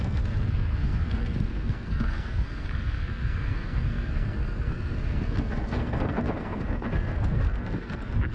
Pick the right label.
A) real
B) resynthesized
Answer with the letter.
B